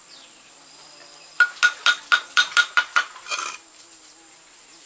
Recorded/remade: recorded